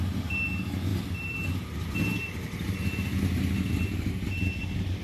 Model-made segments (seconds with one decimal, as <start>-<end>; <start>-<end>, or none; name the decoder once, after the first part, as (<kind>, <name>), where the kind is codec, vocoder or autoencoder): none